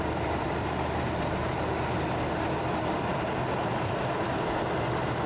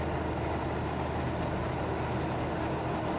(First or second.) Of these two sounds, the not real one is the first